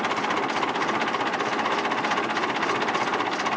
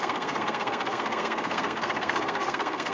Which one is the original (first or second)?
first